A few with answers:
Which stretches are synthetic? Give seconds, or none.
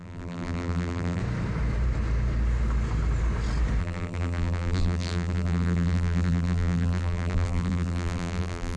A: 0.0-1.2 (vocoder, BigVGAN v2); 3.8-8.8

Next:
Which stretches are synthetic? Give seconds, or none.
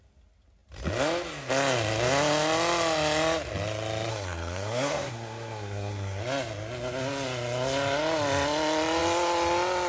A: 4.1-6.2 (codec, SNAC)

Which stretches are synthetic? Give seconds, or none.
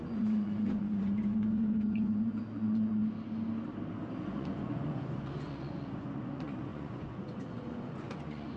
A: 0.0-3.0 (vocoder, Vocos); 4.2-8.6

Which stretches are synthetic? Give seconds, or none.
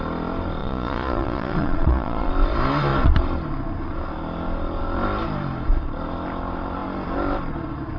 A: 0.6-2.3 (vocoder, Vocos)